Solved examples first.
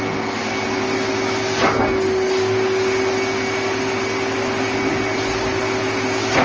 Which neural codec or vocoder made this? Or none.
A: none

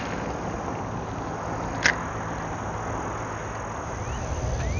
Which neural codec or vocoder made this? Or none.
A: none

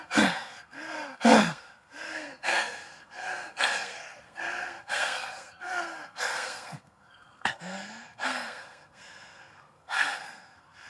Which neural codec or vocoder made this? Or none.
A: codec, SNAC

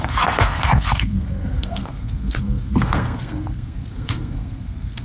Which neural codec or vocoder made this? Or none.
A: codec, SNAC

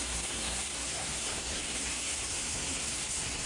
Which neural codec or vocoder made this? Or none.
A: codec, SNAC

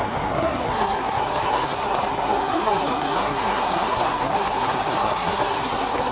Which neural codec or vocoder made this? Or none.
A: codec, SNAC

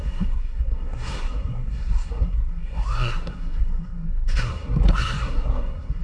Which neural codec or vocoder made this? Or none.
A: codec, SNAC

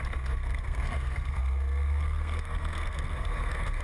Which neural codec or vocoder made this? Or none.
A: codec, SNAC